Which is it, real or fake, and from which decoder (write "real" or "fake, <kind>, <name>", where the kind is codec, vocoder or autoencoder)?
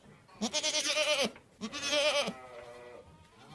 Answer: real